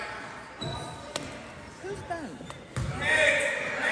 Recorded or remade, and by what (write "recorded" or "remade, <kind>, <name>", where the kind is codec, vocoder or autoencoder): recorded